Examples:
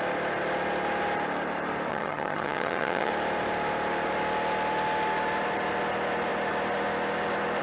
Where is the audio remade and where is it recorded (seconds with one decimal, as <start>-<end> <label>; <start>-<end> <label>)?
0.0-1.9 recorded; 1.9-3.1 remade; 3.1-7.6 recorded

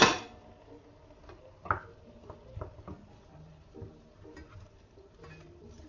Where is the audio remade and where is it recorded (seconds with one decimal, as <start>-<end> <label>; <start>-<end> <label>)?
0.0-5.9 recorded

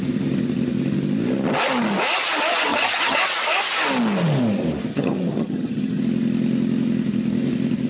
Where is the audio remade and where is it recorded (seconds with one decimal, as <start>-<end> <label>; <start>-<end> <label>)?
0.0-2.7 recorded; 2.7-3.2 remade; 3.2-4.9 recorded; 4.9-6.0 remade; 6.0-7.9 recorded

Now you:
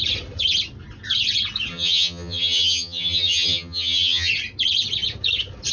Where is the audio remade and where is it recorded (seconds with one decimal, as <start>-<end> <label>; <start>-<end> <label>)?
0.0-1.7 recorded; 1.7-4.3 remade; 4.3-5.7 recorded

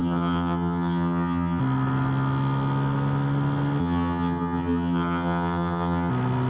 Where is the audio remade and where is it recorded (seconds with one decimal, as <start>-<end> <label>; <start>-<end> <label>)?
0.0-1.6 remade; 1.6-3.8 recorded; 3.8-6.1 remade; 6.1-6.5 recorded

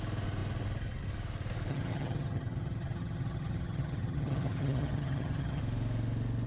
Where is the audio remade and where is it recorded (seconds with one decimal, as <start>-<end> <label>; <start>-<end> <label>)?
0.0-1.7 recorded; 1.7-5.6 remade; 5.6-6.5 recorded